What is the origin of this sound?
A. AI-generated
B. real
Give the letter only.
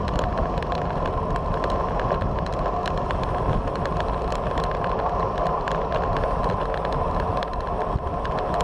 B